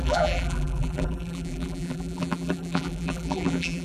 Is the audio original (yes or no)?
no